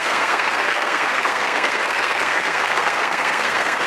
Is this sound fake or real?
fake